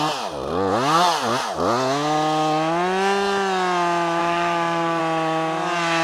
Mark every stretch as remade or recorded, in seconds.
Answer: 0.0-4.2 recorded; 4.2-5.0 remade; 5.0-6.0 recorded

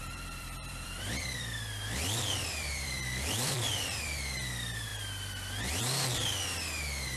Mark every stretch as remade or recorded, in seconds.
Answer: 0.0-4.0 remade; 4.0-4.9 recorded; 4.9-5.8 remade; 5.8-7.2 recorded

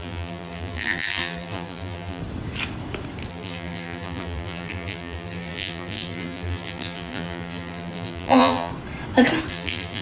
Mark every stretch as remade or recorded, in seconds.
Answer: 0.0-2.2 remade; 2.2-3.3 recorded; 3.3-8.7 remade; 8.7-9.5 recorded; 9.5-10.0 remade

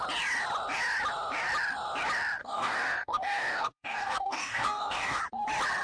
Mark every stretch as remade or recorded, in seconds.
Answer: 0.0-2.4 recorded; 2.4-5.2 remade; 5.2-5.8 recorded